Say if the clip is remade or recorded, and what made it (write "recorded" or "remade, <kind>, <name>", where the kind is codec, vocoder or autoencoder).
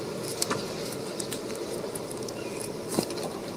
remade, vocoder, BigVGAN v2